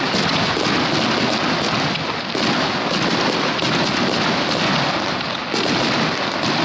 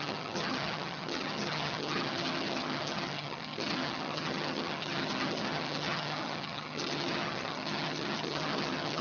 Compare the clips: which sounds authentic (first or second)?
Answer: first